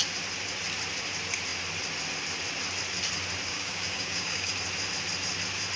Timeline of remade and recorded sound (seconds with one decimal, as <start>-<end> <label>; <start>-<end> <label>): 0.0-3.5 recorded; 3.5-4.5 remade; 4.5-5.8 recorded